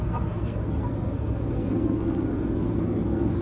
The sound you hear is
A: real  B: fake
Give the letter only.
B